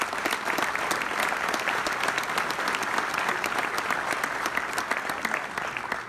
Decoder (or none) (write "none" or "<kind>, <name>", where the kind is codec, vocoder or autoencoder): none